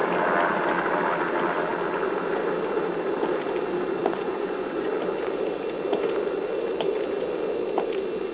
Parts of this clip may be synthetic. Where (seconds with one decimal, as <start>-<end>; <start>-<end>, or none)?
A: 4.0-4.9